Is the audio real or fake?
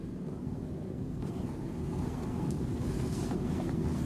fake